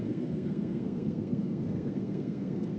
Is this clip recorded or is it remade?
remade